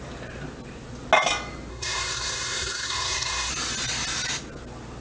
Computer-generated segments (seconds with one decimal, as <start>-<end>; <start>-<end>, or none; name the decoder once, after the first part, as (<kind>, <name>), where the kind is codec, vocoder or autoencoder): 1.7-3.5 (codec, SNAC)